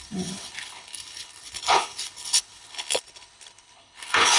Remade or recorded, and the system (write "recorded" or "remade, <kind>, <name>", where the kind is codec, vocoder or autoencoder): remade, codec, HILCodec